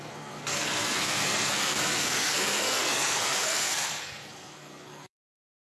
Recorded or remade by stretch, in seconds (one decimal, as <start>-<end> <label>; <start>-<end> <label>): 0.0-5.7 remade